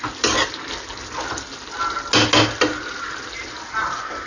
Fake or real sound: real